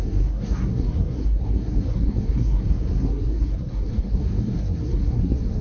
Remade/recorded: remade